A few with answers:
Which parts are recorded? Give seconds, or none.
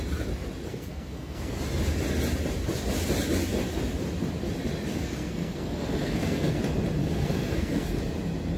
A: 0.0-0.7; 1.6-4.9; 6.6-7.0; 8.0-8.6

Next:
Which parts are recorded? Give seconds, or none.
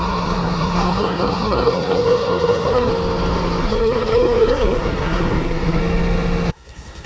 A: 2.9-3.6; 5.8-6.5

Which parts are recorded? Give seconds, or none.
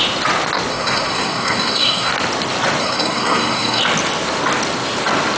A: 0.0-0.7; 2.1-2.8; 3.8-5.4